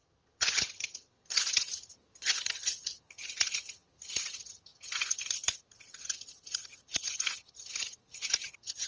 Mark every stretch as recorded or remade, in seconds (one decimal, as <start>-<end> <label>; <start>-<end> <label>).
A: 0.0-8.9 remade